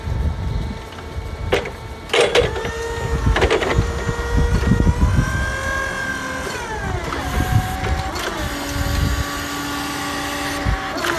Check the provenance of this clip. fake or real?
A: real